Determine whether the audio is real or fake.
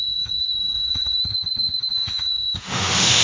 fake